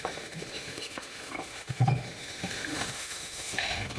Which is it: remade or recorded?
remade